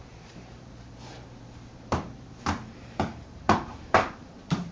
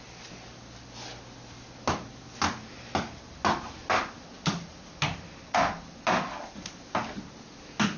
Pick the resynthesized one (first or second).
first